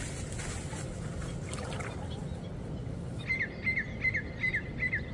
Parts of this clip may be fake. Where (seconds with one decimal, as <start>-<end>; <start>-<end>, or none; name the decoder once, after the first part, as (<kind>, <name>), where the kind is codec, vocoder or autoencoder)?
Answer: none